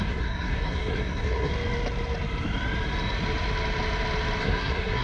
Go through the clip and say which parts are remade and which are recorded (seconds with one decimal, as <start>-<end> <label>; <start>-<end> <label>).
0.0-1.5 remade; 1.5-4.4 recorded; 4.4-5.0 remade